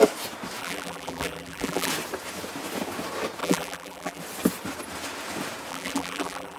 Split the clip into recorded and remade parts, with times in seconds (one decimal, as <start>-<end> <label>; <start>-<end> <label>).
0.0-0.6 recorded; 0.6-1.9 remade; 1.9-3.4 recorded; 3.4-4.2 remade; 4.2-5.7 recorded; 5.7-6.6 remade